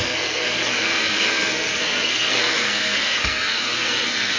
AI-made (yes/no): yes